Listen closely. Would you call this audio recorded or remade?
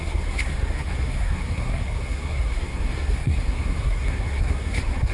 remade